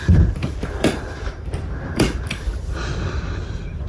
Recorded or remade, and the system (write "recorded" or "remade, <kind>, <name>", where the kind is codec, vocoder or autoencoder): remade, vocoder, BigVGAN v2